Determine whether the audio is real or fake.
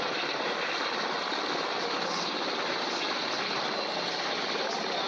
real